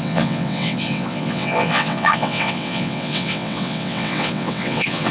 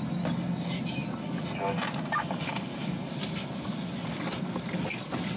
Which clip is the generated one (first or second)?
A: first